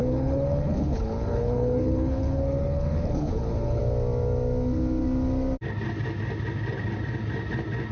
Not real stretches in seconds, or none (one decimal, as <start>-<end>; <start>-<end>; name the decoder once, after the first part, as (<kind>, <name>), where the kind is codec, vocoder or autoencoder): 0.0-3.8 (codec, HILCodec)